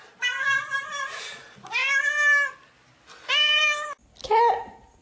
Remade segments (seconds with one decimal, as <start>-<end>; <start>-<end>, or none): 0.0-1.8; 3.3-4.0; 4.6-5.0